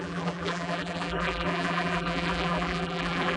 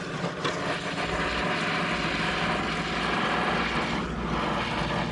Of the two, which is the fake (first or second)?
first